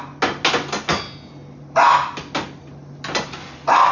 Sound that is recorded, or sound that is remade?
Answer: recorded